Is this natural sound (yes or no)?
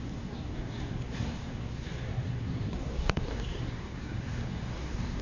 no